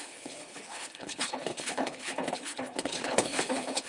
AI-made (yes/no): yes